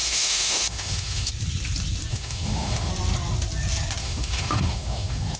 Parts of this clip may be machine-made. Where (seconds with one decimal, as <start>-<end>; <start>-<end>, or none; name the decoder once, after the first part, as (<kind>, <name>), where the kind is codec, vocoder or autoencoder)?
0.0-1.3 (autoencoder, DAC-VAE); 2.1-2.9; 4.0-5.4